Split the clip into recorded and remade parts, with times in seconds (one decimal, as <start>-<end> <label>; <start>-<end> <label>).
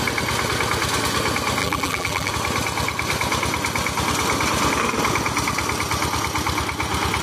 0.0-1.6 recorded; 1.6-2.3 remade; 2.3-7.2 recorded